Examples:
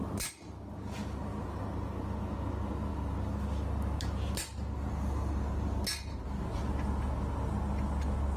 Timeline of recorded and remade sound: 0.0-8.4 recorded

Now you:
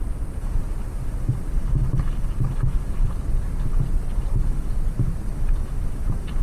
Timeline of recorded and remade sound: 0.0-6.4 recorded

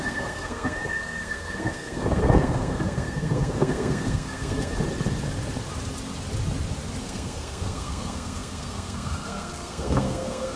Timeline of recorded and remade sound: 0.0-4.7 remade; 4.7-7.0 recorded; 7.0-10.6 remade

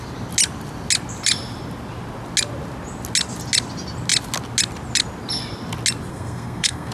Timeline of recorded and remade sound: 0.0-6.1 recorded; 6.1-6.9 remade

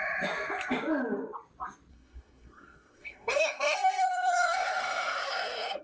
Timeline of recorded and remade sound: 0.0-1.9 recorded; 1.9-5.8 remade

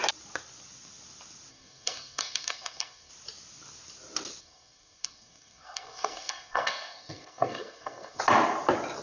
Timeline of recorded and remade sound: 0.0-1.5 recorded; 1.5-3.1 remade; 3.1-4.4 recorded; 4.4-8.2 remade; 8.2-9.0 recorded

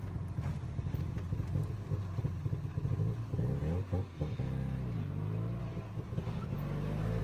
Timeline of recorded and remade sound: 0.0-7.2 recorded

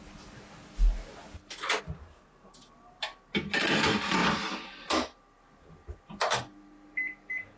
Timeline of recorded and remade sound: 0.0-7.6 recorded